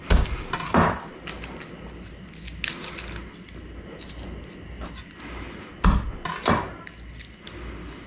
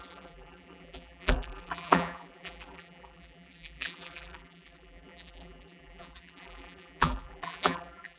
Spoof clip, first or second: second